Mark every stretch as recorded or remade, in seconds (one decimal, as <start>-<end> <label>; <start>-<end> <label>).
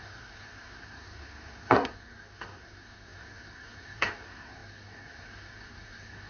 0.0-6.3 remade